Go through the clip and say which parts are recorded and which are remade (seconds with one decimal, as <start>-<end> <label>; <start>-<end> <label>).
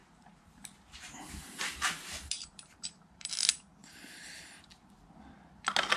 0.0-3.3 remade; 3.3-3.8 recorded; 3.8-4.4 remade; 4.4-6.0 recorded